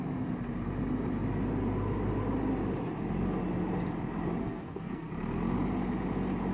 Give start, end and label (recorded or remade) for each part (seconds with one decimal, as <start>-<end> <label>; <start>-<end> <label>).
0.0-4.4 recorded; 4.4-5.1 remade; 5.1-6.5 recorded